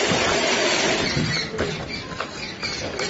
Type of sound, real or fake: real